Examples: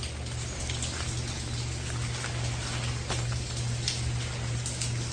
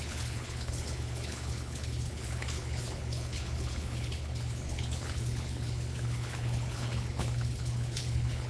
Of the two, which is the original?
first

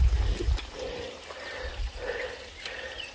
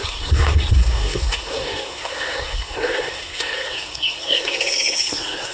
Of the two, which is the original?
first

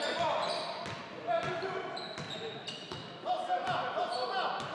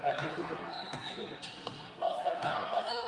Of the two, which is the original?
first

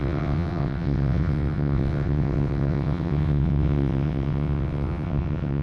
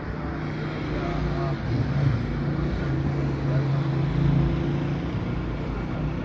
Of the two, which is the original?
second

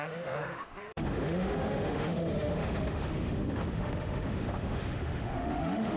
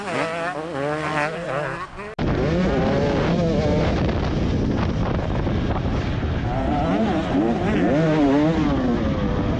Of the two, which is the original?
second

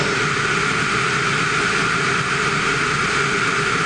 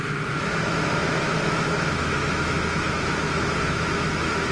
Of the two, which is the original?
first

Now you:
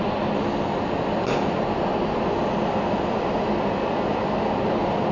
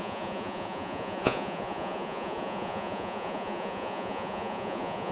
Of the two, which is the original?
first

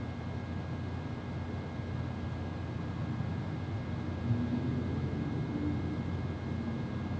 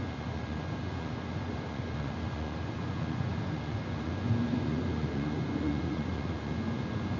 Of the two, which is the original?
first